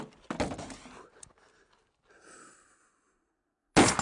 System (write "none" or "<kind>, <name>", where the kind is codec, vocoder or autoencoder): none